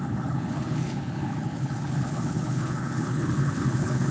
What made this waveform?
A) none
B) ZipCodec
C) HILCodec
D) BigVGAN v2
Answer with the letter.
C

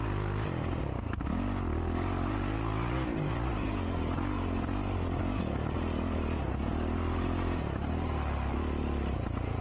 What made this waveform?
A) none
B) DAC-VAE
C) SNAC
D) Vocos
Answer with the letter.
A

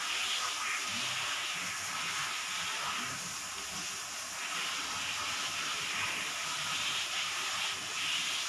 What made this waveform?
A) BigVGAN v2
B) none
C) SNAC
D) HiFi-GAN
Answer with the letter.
B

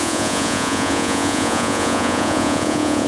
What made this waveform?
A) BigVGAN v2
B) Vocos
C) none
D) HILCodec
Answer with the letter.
B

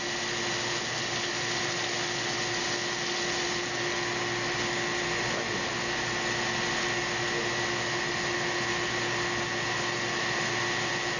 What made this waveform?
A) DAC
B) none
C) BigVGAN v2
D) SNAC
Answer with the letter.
B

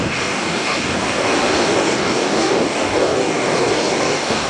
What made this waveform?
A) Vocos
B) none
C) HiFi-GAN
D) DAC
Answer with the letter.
D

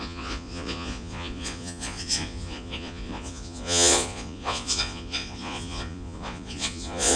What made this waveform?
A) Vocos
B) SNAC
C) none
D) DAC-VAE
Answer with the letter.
A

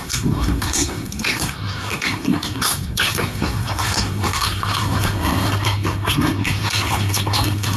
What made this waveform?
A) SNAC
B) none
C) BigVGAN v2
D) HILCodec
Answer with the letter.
A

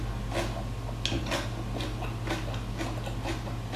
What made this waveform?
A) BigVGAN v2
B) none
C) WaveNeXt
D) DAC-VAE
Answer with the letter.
B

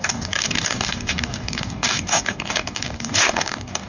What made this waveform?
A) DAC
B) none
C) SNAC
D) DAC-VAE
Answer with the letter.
A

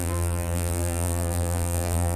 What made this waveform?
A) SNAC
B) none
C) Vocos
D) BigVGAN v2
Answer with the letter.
D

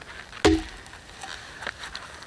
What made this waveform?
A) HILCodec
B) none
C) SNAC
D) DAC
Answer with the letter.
B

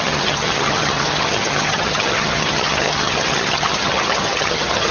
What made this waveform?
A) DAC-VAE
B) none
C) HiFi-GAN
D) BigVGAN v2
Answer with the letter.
C